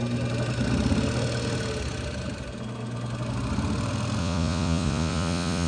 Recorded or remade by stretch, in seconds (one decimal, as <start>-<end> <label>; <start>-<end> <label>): 0.0-4.2 recorded; 4.2-5.7 remade